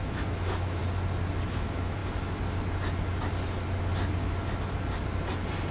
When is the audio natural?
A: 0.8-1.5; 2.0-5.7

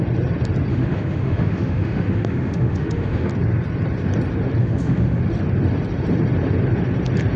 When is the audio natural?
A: 0.0-0.7; 3.3-4.6; 5.2-7.4